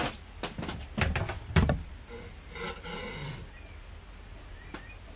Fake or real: real